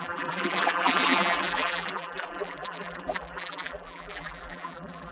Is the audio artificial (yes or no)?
yes